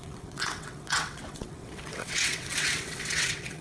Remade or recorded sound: remade